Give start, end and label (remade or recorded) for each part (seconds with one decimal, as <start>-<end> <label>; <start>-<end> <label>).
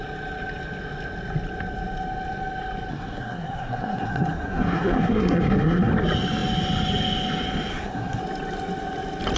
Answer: 0.0-2.9 recorded; 2.9-5.9 remade; 5.9-7.7 recorded; 7.7-8.2 remade; 8.2-9.4 recorded